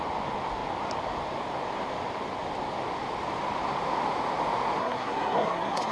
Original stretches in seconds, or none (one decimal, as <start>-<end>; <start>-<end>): 0.0-4.8